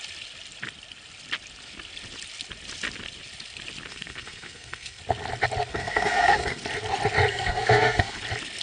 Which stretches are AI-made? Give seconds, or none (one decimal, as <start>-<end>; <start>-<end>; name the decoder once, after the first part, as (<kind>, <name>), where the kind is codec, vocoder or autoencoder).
3.9-5.0 (codec, SNAC); 5.7-6.6; 7.3-8.2